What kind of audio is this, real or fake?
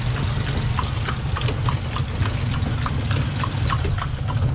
real